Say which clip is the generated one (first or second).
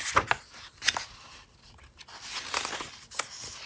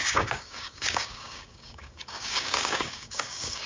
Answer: second